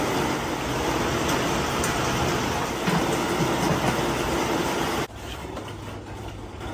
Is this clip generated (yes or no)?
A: no